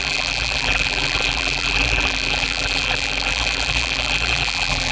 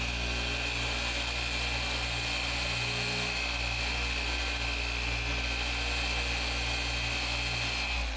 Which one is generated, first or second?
first